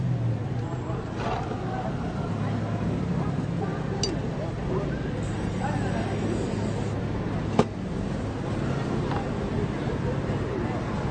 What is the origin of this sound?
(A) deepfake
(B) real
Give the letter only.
B